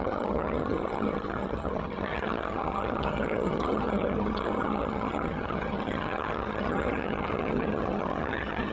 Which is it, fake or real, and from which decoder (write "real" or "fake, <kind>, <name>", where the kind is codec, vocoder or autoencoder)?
fake, vocoder, HiFi-GAN